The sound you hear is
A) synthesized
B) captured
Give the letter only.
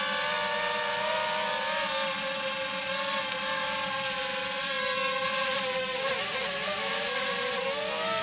B